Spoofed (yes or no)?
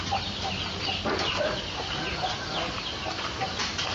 no